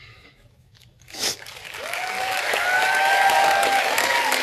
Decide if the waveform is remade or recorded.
remade